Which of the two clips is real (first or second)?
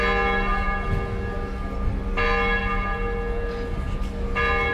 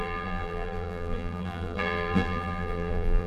first